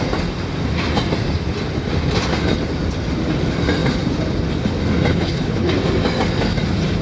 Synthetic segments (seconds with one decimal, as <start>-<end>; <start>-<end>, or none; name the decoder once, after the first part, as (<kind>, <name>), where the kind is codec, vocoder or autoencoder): 5.1-5.7 (codec, HILCodec)